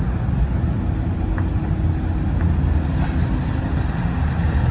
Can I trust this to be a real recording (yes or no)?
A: yes